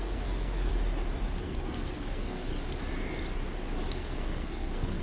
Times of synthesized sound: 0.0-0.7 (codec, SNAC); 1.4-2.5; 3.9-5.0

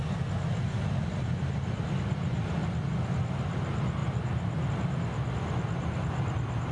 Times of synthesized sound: none

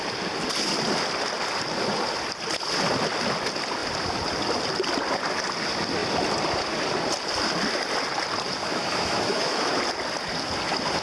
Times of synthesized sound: 8.6-9.8 (autoencoder, DAC-VAE)

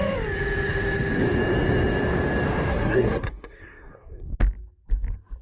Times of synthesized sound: 2.7-4.3 (codec, SNAC)

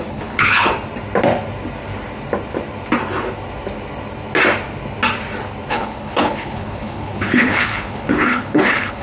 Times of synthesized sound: 0.0-0.7 (codec, HILCodec); 5.7-9.0

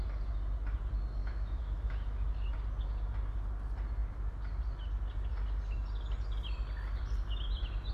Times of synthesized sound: 1.2-2.3 (autoencoder, DAC-VAE)

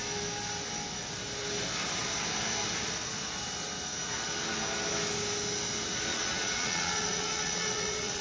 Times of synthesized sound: 6.1-8.2 (vocoder, Vocos)